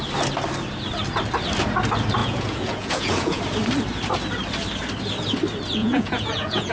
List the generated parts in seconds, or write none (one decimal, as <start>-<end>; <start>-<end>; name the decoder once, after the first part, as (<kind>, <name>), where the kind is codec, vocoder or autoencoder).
2.2-3.4 (vocoder, Vocos); 5.8-6.7